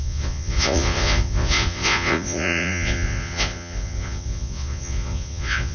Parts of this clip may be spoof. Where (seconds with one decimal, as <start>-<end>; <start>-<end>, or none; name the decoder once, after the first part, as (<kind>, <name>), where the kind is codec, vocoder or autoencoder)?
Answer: 0.0-5.7 (vocoder, Vocos)